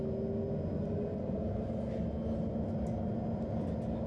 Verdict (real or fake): real